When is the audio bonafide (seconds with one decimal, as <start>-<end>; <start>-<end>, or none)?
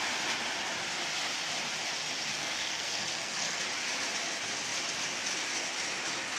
0.0-2.3; 3.6-6.4